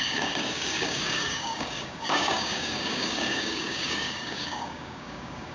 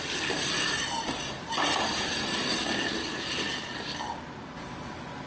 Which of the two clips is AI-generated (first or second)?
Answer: first